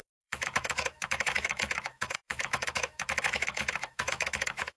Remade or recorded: remade